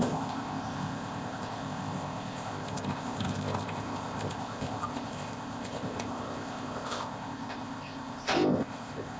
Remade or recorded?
remade